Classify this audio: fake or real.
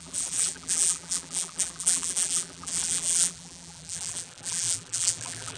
fake